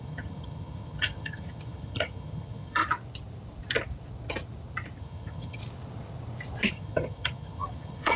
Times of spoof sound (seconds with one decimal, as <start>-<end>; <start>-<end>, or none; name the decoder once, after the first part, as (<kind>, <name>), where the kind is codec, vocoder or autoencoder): 0.0-2.8 (vocoder, HiFi-GAN); 5.0-5.6; 6.7-8.2

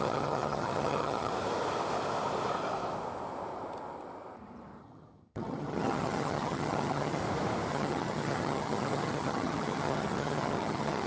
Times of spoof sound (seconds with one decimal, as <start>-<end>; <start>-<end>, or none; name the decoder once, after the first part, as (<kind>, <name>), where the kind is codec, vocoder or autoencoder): 0.0-1.3 (vocoder, HiFi-GAN); 4.8-7.2; 7.7-11.1